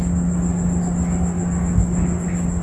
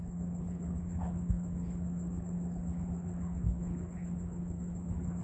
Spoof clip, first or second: second